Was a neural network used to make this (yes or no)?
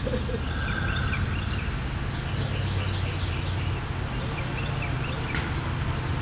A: no